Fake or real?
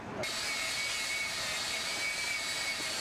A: real